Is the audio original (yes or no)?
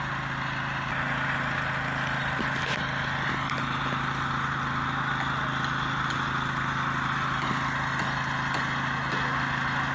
yes